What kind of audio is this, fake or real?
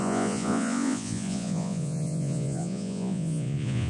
fake